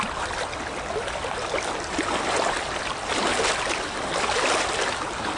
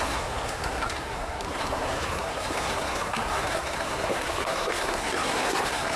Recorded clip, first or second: first